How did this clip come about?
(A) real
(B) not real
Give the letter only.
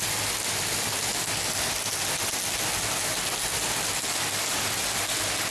A